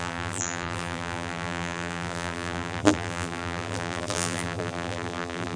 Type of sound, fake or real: fake